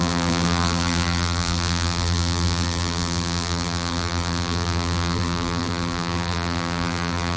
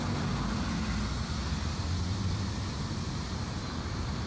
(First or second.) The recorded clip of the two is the second